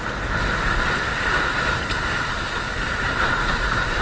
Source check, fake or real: real